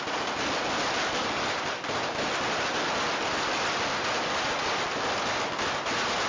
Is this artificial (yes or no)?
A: no